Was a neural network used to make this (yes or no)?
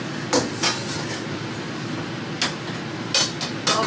no